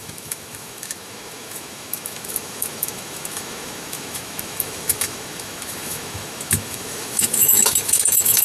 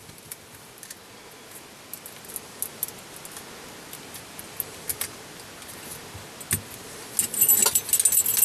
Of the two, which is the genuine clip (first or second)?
second